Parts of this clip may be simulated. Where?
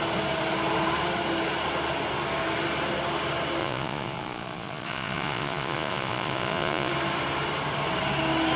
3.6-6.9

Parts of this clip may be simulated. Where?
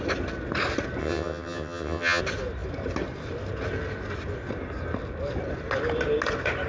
1.0-2.2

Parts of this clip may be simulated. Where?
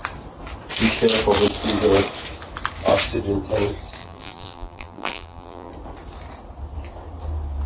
4.0-5.7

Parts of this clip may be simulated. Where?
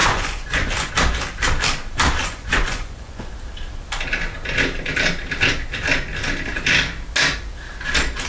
0.0-0.9; 2.2-3.3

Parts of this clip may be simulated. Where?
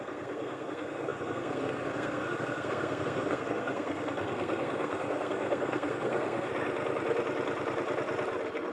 0.0-6.5